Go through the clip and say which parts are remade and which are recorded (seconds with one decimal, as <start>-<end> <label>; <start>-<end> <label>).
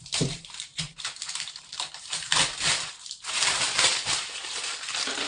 0.0-5.3 remade